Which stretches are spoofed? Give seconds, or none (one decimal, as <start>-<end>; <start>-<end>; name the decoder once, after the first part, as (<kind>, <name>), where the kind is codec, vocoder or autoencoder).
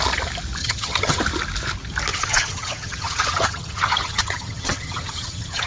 0.6-1.2 (vocoder, HiFi-GAN); 2.1-5.7